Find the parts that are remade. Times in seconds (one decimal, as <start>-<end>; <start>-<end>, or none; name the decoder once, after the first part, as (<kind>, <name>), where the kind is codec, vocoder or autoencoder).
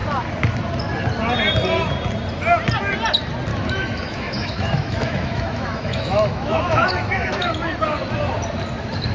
3.5-7.5 (autoencoder, DAC-VAE)